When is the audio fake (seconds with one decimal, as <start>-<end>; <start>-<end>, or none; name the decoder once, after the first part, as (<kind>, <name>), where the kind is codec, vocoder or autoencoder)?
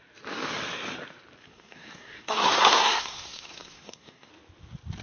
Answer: 1.4-4.3 (codec, SNAC)